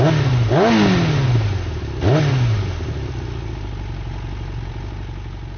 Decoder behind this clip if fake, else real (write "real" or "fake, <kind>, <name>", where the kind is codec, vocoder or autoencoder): real